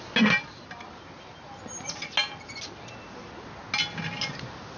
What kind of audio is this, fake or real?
real